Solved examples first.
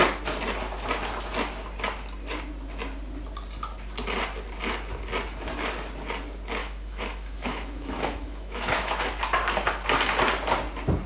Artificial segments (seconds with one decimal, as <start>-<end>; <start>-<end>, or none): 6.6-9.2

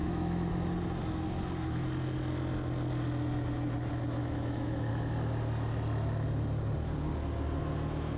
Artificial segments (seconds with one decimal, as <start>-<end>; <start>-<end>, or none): 0.0-0.5; 4.2-4.9

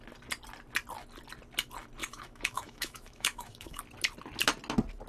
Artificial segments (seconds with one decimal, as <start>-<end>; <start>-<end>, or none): 2.0-3.8

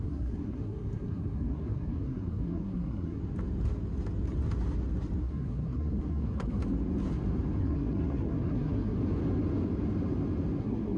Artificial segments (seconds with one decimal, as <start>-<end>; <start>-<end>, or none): 0.0-3.2; 5.2-6.6; 7.6-9.0; 10.6-11.0

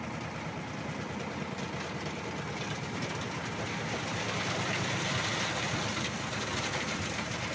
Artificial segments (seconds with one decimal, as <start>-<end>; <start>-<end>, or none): none

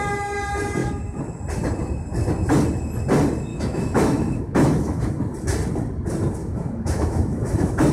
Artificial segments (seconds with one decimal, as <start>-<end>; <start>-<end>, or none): 0.8-1.4; 3.5-5.2; 6.4-7.9